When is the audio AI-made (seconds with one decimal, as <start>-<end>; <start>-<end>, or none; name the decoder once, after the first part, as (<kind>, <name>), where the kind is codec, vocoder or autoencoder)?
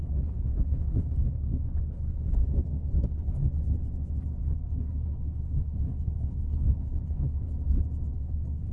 0.0-2.4 (codec, HILCodec); 3.0-3.4; 4.4-7.5; 8.1-8.7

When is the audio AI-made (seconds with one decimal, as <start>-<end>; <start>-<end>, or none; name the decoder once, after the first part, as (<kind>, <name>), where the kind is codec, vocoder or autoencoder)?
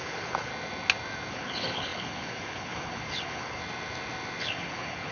0.0-0.5 (codec, HILCodec); 1.3-3.6; 4.4-5.1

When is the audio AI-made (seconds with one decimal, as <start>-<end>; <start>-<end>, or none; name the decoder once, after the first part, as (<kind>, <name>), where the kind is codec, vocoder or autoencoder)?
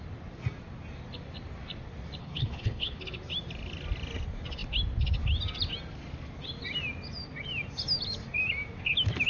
2.2-3.0 (codec, HILCodec)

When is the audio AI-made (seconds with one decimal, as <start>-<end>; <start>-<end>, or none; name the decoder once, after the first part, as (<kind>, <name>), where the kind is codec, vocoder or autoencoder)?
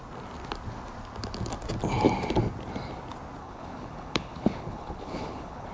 3.4-5.7 (codec, HILCodec)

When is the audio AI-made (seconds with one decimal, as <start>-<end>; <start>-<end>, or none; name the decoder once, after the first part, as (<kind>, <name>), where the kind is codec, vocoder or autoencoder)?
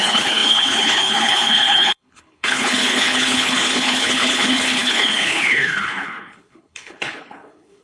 0.0-7.8 (codec, HILCodec)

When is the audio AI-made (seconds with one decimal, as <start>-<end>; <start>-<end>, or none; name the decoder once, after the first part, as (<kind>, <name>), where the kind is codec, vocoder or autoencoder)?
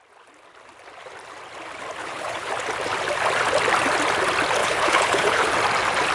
2.0-2.5 (codec, HILCodec); 4.6-5.5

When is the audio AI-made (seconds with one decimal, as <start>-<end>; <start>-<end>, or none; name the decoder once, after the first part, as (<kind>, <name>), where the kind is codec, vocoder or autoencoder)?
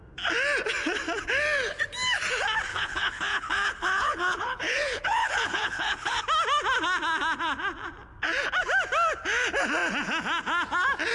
2.7-6.2 (codec, HILCodec)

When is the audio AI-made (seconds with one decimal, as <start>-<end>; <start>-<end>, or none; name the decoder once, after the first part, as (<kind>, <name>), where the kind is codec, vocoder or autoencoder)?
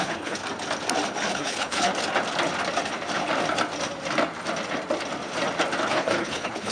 0.0-0.4 (codec, HILCodec); 1.3-1.9; 5.9-6.7